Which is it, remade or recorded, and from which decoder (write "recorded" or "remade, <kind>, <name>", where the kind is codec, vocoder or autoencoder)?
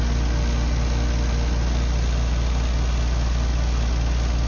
recorded